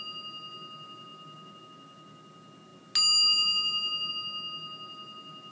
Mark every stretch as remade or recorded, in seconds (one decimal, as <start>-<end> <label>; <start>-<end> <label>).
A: 0.0-5.5 recorded

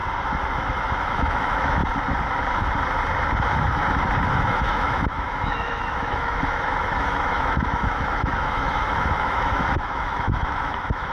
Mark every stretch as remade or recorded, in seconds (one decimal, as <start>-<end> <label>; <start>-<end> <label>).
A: 0.0-1.0 recorded; 1.0-1.8 remade; 1.8-4.3 recorded; 4.3-11.1 remade

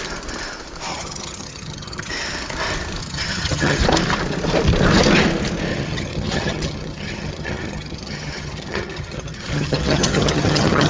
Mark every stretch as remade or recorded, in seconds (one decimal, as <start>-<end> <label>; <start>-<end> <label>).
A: 0.0-0.9 recorded; 0.9-2.1 remade; 2.1-3.0 recorded; 3.0-3.8 remade; 3.8-5.7 recorded; 5.7-10.9 remade

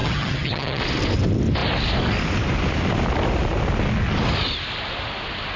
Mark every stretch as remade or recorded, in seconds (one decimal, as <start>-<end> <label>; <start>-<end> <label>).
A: 0.0-0.8 remade; 0.8-5.6 recorded

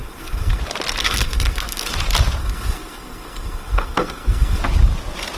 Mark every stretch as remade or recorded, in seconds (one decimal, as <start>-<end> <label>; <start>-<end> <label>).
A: 0.0-0.6 remade; 0.6-1.0 recorded; 1.0-1.9 remade; 1.9-2.4 recorded; 2.4-4.6 remade; 4.6-5.4 recorded

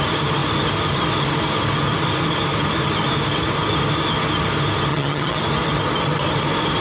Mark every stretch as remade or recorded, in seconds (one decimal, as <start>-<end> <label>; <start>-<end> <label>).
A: 0.0-4.9 recorded; 4.9-5.4 remade; 5.4-6.8 recorded

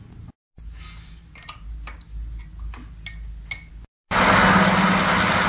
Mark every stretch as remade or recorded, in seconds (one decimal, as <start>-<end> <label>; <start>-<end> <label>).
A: 0.0-5.5 recorded